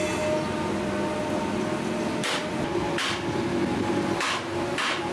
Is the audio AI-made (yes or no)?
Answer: no